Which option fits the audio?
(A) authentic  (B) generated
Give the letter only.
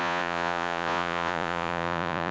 B